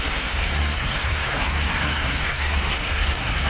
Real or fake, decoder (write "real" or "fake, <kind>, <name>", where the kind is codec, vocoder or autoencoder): fake, codec, SNAC